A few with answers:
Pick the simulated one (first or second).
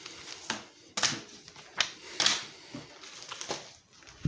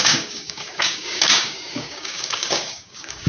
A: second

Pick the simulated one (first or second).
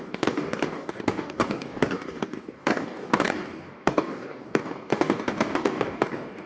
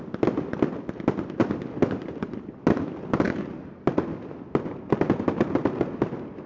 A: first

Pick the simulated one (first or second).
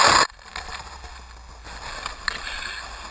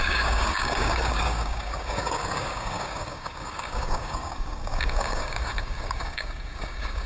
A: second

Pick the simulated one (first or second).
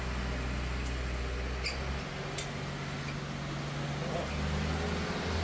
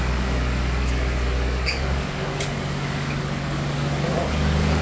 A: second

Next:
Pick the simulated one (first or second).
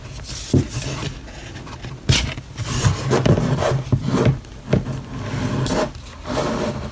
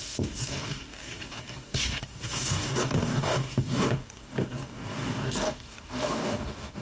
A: second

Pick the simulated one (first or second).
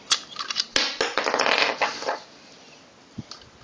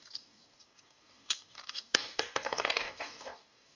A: second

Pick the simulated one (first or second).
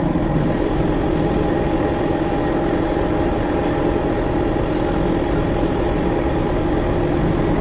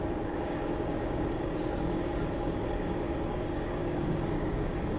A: second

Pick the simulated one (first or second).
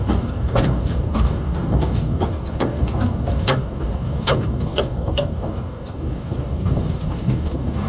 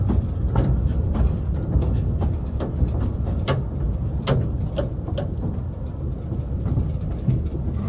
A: first